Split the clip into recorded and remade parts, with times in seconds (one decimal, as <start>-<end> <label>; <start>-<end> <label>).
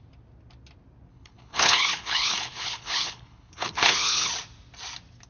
0.0-1.1 recorded; 1.1-4.3 remade; 4.3-5.3 recorded